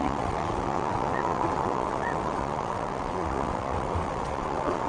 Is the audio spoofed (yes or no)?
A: yes